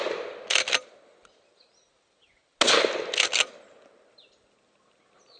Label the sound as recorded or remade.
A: recorded